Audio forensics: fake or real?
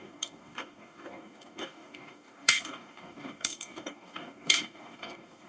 fake